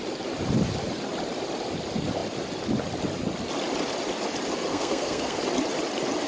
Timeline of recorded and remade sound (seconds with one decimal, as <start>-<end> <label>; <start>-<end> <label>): 0.0-4.7 recorded; 4.7-5.4 remade; 5.4-6.3 recorded